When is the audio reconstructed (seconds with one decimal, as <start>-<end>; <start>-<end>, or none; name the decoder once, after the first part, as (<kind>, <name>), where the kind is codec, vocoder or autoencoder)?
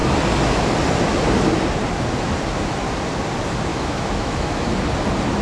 3.7-4.7 (autoencoder, DAC-VAE)